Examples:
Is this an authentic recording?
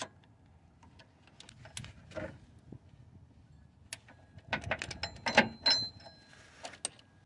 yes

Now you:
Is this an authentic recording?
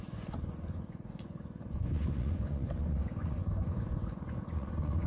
no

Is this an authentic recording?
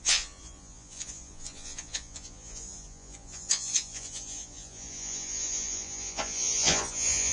no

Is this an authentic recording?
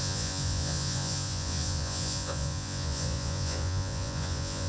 no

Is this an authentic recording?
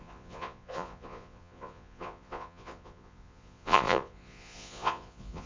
no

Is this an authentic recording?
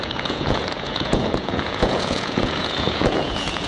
no